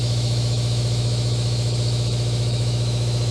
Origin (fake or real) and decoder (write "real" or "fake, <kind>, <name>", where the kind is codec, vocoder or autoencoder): fake, autoencoder, DAC-VAE